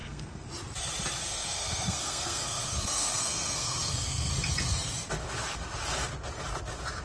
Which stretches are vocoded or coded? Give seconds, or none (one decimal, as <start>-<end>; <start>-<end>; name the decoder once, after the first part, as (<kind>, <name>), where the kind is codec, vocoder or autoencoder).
0.0-0.5 (codec, SNAC); 1.2-4.3